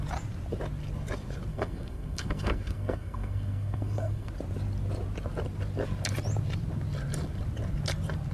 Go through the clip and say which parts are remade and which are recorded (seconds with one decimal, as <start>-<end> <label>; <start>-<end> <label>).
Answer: 0.0-1.5 recorded; 1.5-4.3 remade; 4.3-8.3 recorded